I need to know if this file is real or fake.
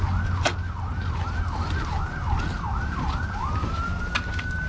real